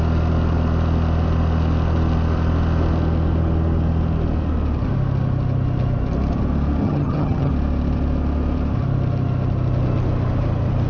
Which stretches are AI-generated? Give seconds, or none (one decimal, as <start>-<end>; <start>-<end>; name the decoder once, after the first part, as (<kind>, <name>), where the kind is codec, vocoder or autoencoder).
6.8-7.5 (vocoder, HiFi-GAN)